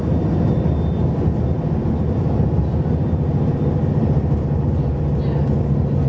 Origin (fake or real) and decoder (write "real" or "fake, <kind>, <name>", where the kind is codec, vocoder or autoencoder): real